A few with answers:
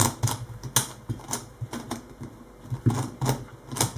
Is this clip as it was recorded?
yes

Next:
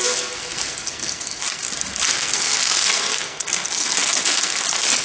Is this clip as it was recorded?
no